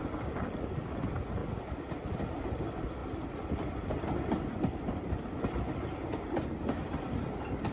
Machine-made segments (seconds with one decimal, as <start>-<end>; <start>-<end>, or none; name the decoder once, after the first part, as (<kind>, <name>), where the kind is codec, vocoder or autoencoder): none